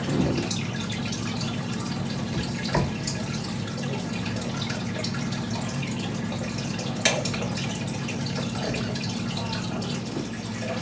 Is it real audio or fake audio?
real